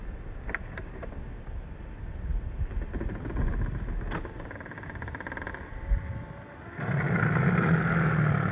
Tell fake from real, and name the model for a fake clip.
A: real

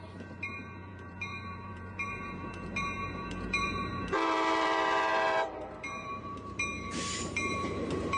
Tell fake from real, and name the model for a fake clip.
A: fake, vocoder, BigVGAN v2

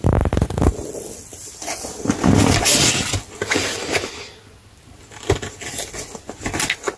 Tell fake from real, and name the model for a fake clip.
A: real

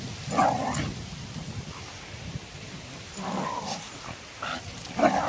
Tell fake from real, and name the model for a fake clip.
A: real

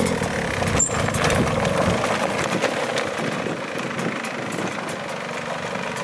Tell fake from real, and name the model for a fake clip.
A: real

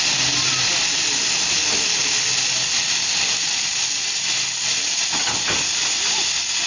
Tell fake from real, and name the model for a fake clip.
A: real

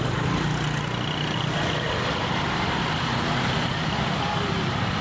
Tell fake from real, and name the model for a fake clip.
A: real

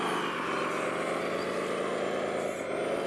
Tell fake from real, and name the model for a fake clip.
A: real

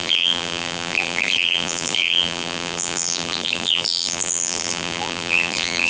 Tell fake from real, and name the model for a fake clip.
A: fake, vocoder, BigVGAN v2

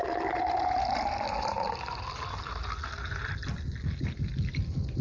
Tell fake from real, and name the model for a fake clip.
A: real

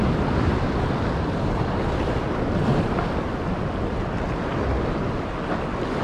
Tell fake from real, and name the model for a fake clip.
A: real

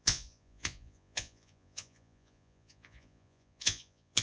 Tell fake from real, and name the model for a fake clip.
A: fake, vocoder, Vocos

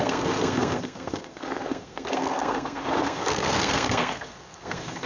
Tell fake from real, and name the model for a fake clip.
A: fake, codec, SNAC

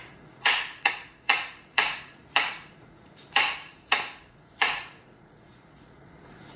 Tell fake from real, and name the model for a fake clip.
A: fake, vocoder, Vocos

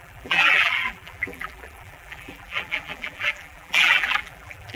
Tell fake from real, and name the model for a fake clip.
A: fake, vocoder, BigVGAN v2